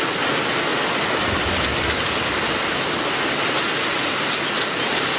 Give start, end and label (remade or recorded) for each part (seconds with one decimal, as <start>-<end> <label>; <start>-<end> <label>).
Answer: 0.0-5.2 recorded